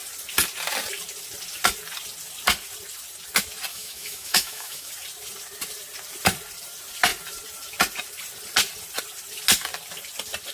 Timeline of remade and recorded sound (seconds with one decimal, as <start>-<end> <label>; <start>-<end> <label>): 0.0-3.7 recorded; 3.7-4.9 remade; 4.9-10.5 recorded